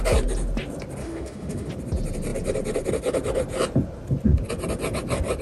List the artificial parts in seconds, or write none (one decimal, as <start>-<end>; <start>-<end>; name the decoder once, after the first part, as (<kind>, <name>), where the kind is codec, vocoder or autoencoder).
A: 1.0-1.7 (autoencoder, DAC-VAE)